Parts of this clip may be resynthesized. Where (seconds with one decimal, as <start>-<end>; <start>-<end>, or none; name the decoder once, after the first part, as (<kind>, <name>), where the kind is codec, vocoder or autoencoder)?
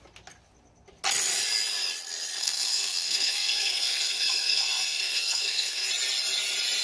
2.4-5.9 (codec, SNAC)